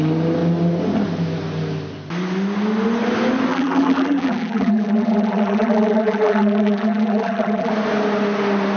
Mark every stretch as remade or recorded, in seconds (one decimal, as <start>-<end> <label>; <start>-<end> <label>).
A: 0.0-3.5 recorded; 3.5-7.7 remade; 7.7-8.8 recorded